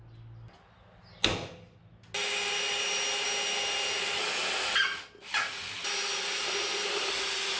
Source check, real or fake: real